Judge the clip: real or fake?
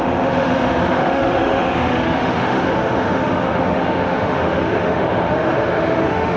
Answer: fake